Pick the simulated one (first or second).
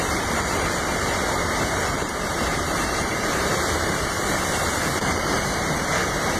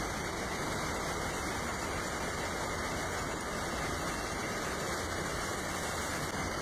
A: first